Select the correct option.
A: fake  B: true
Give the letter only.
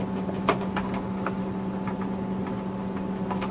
B